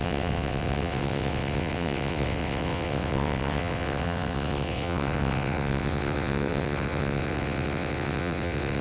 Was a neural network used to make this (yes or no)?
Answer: yes